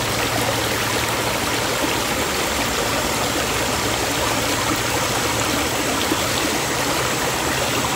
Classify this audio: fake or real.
real